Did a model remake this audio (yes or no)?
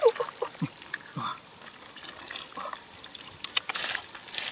no